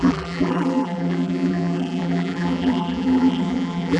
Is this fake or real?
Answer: fake